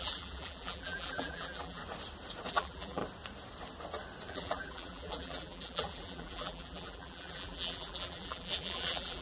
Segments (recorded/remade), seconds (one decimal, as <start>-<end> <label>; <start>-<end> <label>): 0.0-1.8 remade; 1.8-2.5 recorded; 2.5-3.0 remade; 3.0-4.3 recorded; 4.3-9.2 remade